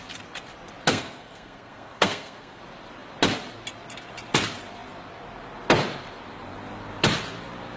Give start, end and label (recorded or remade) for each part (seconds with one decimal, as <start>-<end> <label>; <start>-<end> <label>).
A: 0.0-0.9 recorded; 0.9-2.6 remade; 2.6-7.8 recorded